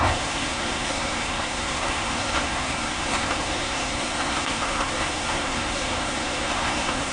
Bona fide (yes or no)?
no